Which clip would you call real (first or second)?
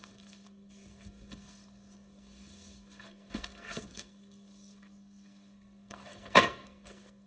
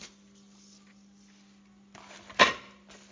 second